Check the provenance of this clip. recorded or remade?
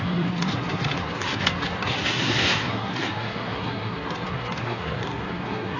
remade